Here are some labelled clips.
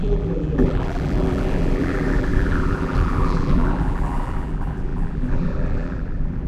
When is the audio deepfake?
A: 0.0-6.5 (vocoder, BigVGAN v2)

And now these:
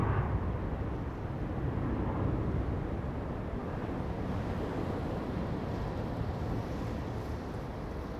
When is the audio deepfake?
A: none

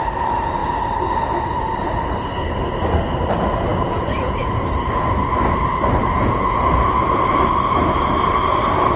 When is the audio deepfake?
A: 3.7-4.6 (vocoder, Vocos); 6.0-7.2

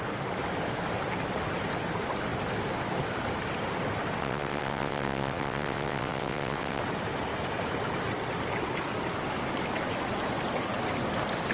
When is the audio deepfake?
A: 4.2-6.8 (vocoder, WaveNeXt)